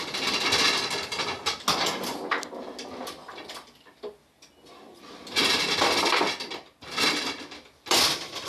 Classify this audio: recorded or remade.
recorded